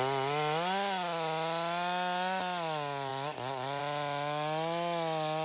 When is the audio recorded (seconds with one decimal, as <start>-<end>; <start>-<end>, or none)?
0.0-5.4